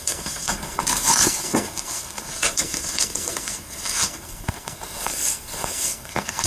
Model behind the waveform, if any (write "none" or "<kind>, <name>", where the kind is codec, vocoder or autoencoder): codec, SNAC